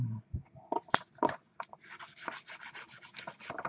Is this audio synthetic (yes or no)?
no